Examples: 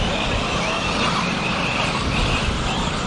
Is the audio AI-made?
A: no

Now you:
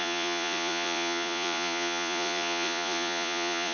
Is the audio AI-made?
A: yes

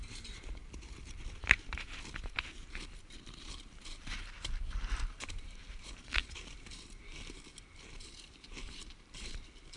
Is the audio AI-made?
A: yes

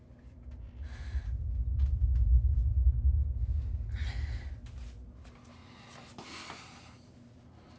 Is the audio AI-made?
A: no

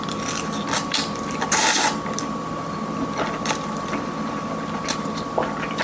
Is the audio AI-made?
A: no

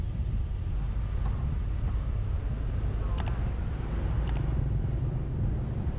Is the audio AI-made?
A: yes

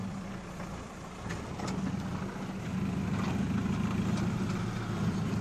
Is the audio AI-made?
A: no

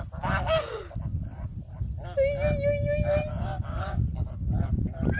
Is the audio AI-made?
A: no